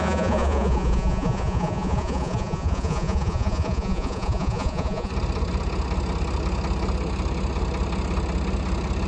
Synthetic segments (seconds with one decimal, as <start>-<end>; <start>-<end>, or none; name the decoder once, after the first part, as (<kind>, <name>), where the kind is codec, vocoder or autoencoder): 0.0-5.1 (vocoder, Vocos)